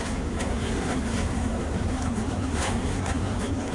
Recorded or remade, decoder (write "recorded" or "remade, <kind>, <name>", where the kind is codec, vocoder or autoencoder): remade, codec, SNAC